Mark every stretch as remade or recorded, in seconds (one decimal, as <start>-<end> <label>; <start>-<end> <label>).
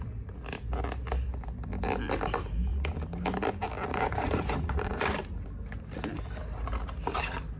0.0-3.9 recorded; 3.9-5.0 remade; 5.0-7.6 recorded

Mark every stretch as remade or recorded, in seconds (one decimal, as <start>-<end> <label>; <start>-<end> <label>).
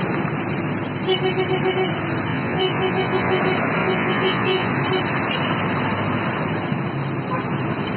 0.0-2.3 recorded; 2.3-3.4 remade; 3.4-3.8 recorded; 3.8-4.7 remade; 4.7-8.0 recorded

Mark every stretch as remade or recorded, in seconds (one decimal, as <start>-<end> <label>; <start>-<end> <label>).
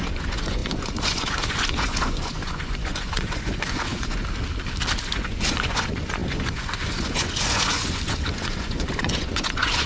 0.0-4.2 remade; 4.2-5.0 recorded; 5.0-9.9 remade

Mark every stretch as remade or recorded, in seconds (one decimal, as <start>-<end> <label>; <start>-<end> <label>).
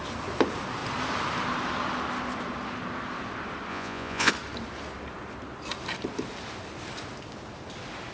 0.0-3.7 recorded; 3.7-4.3 remade; 4.3-8.1 recorded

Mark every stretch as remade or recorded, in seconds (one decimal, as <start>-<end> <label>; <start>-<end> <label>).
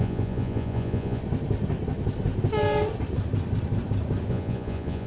0.0-1.2 remade; 1.2-4.3 recorded; 4.3-5.1 remade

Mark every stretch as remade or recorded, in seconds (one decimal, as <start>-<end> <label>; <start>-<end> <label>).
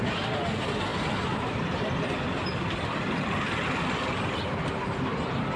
0.0-5.6 recorded